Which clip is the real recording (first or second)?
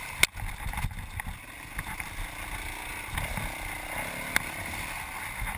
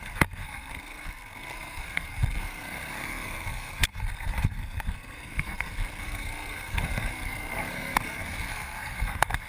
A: first